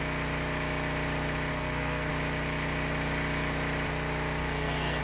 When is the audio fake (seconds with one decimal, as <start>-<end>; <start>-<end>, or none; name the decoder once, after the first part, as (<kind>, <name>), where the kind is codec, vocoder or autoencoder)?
1.5-2.1 (codec, SNAC); 4.4-5.0